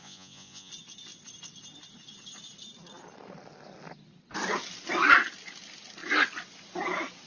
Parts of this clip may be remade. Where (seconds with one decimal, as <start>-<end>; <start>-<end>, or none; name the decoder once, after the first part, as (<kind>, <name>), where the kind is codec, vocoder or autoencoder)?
0.0-0.7 (vocoder, Vocos)